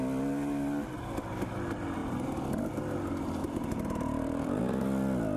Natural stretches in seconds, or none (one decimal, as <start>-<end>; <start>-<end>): 0.0-3.4; 4.6-5.4